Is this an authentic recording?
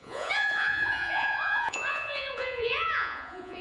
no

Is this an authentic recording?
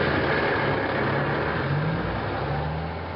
yes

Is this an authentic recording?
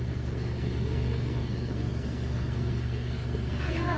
no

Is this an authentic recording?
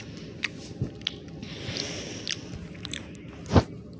no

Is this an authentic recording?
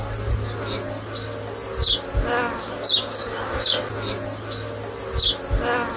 yes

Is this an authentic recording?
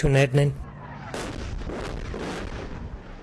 yes